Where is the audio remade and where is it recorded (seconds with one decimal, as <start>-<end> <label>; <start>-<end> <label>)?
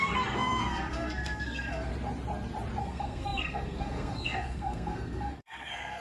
0.0-1.9 remade; 1.9-2.8 recorded; 2.8-6.0 remade